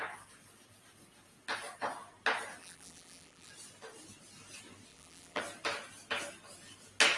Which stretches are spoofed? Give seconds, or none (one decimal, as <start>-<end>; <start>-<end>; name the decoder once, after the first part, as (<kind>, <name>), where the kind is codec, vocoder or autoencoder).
2.6-3.5 (vocoder, BigVGAN v2); 4.9-5.4